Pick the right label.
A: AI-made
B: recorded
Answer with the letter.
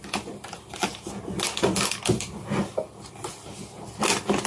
B